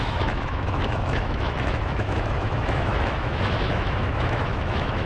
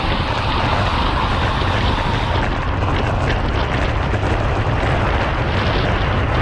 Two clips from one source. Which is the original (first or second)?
second